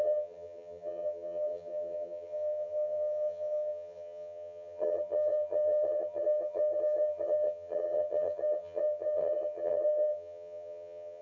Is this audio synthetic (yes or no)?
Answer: yes